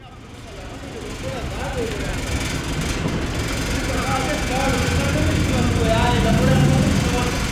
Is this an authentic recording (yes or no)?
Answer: yes